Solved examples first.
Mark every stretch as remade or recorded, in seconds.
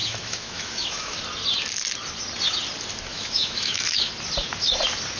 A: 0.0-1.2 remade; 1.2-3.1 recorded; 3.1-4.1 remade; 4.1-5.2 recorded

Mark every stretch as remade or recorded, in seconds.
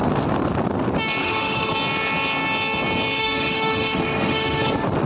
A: 0.0-1.2 recorded; 1.2-1.7 remade; 1.7-3.2 recorded; 3.2-4.6 remade; 4.6-5.1 recorded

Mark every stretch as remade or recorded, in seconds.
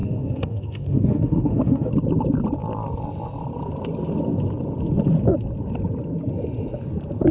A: 0.0-1.9 remade; 1.9-7.3 recorded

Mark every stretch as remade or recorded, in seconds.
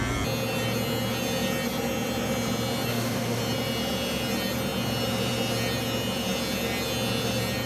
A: 0.0-2.9 recorded; 2.9-3.4 remade; 3.4-7.7 recorded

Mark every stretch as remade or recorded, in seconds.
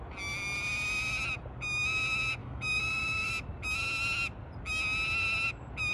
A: 0.0-2.4 recorded; 2.4-3.3 remade; 3.3-5.9 recorded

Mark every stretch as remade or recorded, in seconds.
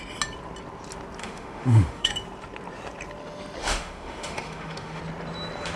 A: 0.0-1.2 recorded; 1.2-2.1 remade; 2.1-3.6 recorded; 3.6-5.0 remade; 5.0-5.8 recorded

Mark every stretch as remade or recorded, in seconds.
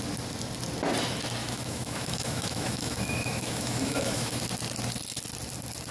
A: 0.0-1.4 recorded; 1.4-4.4 remade; 4.4-5.9 recorded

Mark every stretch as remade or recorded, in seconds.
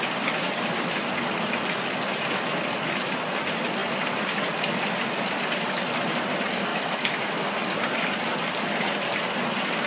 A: 0.0-6.7 recorded; 6.7-7.2 remade; 7.2-9.9 recorded